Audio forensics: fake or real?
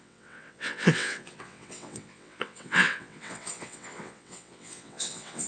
fake